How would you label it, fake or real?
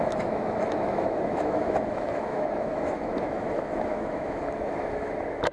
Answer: fake